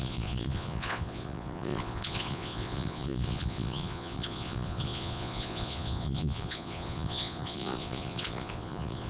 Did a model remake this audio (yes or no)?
yes